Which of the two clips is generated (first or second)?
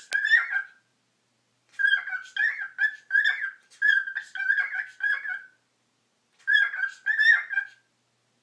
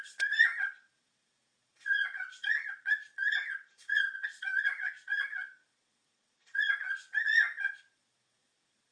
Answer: second